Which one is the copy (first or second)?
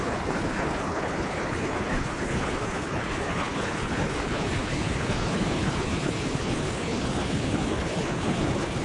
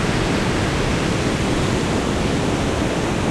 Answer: first